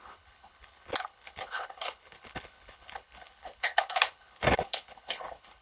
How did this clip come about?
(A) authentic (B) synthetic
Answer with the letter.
B